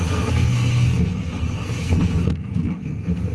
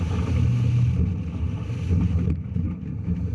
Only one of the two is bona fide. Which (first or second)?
second